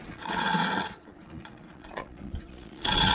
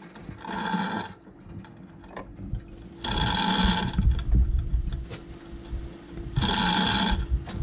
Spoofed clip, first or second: first